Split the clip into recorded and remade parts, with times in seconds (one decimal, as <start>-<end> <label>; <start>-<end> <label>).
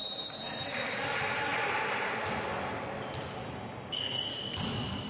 0.0-3.4 recorded; 3.4-4.3 remade; 4.3-5.1 recorded